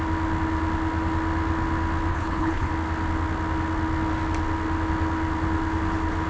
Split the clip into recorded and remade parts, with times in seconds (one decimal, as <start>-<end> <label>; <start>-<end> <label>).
0.0-2.1 recorded; 2.1-2.7 remade; 2.7-6.3 recorded